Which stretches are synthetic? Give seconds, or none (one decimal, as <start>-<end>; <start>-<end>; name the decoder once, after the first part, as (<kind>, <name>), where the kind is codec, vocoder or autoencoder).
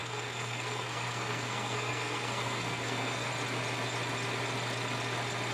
0.0-3.3 (codec, SNAC)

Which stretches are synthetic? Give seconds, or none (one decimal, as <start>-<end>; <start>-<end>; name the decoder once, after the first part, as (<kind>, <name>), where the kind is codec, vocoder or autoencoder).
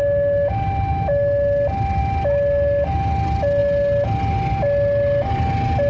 none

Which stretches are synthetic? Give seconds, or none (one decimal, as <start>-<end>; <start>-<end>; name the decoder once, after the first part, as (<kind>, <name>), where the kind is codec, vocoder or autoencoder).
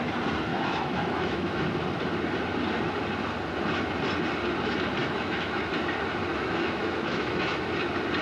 0.5-1.6 (autoencoder, DAC-VAE); 5.0-5.7; 6.3-7.7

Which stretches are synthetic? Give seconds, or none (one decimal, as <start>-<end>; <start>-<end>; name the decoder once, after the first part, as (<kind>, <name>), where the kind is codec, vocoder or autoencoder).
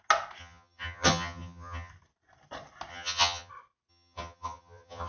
0.4-1.9 (vocoder, HiFi-GAN); 2.9-3.5; 3.9-5.1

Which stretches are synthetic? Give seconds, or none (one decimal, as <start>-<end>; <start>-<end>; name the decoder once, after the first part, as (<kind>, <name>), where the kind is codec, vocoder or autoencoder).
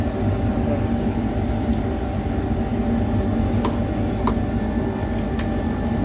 none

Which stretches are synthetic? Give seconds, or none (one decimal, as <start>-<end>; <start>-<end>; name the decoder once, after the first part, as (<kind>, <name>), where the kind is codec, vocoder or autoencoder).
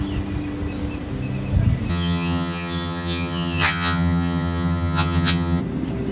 1.9-5.6 (vocoder, HiFi-GAN)